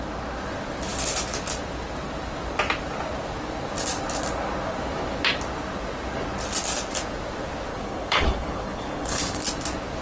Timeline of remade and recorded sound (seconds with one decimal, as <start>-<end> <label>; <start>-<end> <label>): 0.0-7.7 recorded; 7.7-9.4 remade; 9.4-10.0 recorded

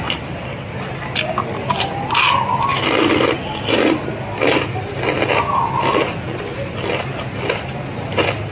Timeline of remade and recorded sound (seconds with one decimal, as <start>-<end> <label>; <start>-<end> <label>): 0.0-8.5 recorded

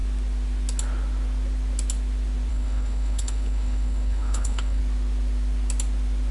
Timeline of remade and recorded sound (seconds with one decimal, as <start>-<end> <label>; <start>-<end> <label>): 0.0-2.5 recorded; 2.5-4.8 remade; 4.8-6.3 recorded

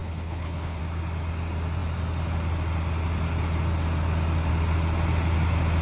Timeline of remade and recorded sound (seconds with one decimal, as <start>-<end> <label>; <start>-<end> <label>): 0.0-0.8 remade; 0.8-5.8 recorded

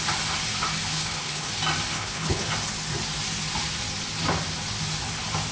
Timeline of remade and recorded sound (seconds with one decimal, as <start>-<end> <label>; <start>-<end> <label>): 0.0-0.9 recorded; 0.9-1.5 remade; 1.5-1.9 recorded; 1.9-2.5 remade; 2.5-5.5 recorded

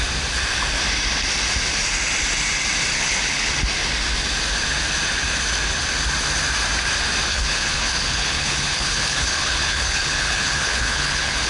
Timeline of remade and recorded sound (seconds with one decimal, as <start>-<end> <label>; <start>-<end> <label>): 0.0-2.9 recorded; 2.9-3.5 remade; 3.5-7.3 recorded; 7.3-11.5 remade

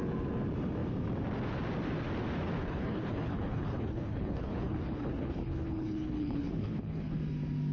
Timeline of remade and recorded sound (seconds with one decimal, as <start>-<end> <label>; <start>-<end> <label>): 0.0-2.6 recorded; 2.6-7.2 remade; 7.2-7.7 recorded